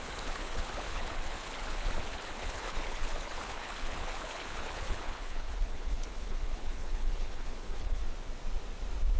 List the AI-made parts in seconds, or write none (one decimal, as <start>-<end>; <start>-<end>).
0.0-8.0